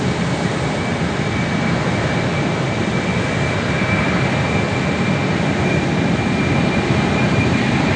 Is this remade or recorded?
remade